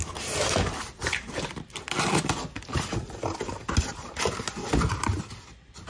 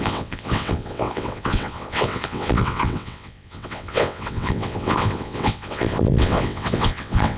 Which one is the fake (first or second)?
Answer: second